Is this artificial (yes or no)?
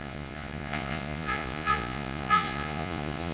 yes